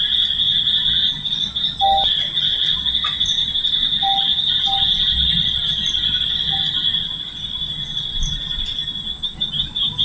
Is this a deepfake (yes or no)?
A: no